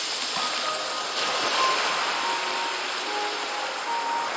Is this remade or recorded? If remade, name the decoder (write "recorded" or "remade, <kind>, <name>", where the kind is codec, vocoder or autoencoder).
recorded